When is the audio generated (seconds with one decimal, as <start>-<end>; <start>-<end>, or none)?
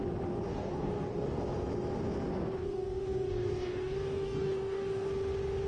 0.5-1.4; 2.6-5.1